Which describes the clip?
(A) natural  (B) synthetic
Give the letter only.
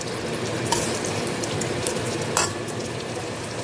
B